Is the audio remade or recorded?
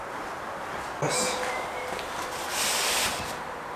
recorded